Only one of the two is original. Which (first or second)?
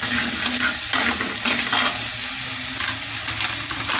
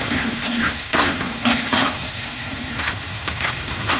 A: first